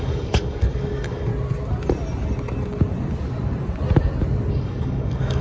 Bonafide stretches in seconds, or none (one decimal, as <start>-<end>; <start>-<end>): 1.3-4.5